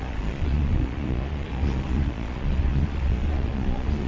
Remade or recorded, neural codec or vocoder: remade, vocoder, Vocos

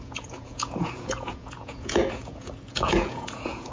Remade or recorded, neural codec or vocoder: remade, vocoder, Vocos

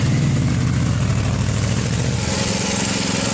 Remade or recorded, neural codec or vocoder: recorded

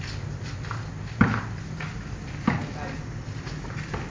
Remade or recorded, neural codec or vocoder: recorded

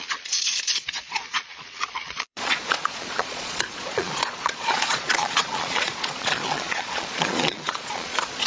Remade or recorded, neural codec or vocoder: remade, vocoder, Vocos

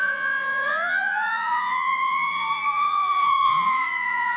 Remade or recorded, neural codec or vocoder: remade, vocoder, Vocos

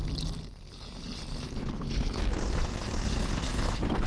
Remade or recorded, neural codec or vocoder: recorded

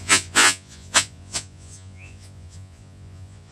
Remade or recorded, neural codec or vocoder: remade, vocoder, Vocos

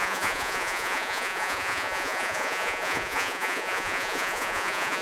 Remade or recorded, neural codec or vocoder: remade, vocoder, Vocos